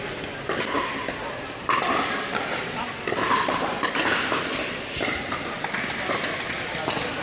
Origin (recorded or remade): recorded